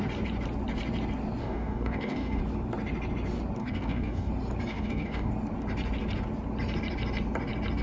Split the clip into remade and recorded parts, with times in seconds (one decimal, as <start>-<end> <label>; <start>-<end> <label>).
0.0-1.4 recorded; 1.4-2.4 remade; 2.4-3.6 recorded; 3.6-4.3 remade; 4.3-4.7 recorded; 4.7-5.3 remade; 5.3-7.8 recorded